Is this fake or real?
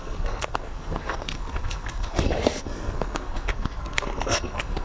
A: fake